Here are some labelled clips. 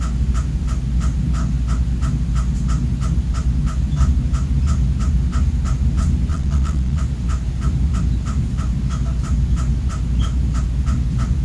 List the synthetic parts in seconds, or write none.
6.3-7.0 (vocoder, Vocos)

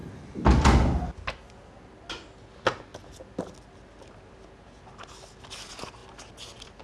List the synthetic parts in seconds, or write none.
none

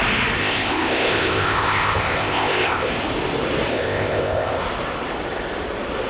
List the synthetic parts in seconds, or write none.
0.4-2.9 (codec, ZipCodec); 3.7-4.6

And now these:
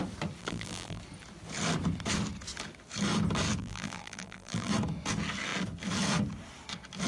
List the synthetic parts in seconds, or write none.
0.4-1.0 (vocoder, BigVGAN v2); 3.6-4.7